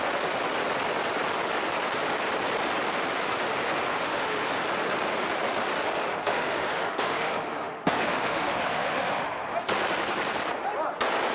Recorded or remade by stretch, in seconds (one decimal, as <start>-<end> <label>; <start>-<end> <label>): 0.0-3.9 recorded; 3.9-4.6 remade; 4.6-6.1 recorded; 6.1-9.1 remade; 9.1-11.3 recorded